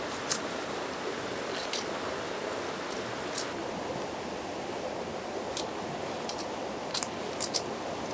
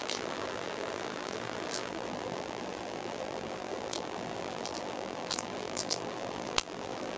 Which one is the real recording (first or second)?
first